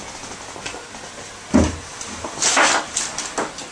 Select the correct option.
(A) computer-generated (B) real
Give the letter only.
B